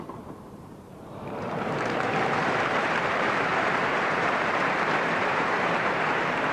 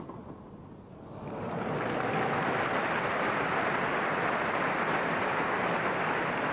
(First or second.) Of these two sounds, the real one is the second